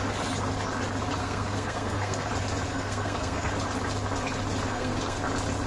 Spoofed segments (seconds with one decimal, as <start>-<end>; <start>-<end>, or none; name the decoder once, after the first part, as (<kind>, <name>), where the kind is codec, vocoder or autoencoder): 1.2-2.3 (codec, SNAC); 2.7-3.5; 4.7-5.2